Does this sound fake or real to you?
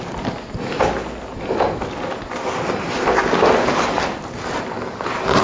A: real